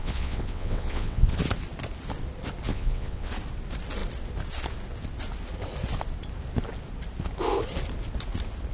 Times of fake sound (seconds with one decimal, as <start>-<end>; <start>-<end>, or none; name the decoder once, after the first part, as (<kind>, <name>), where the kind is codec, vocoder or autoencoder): 0.0-1.4 (vocoder, WaveNeXt); 2.7-3.3